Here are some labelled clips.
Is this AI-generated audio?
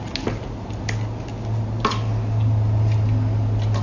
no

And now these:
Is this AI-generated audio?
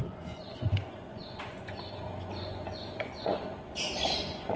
yes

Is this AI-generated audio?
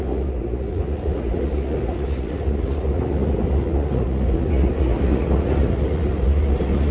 yes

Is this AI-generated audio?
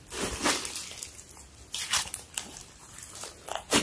no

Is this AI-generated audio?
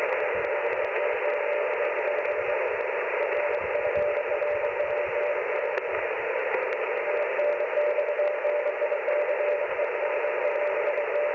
no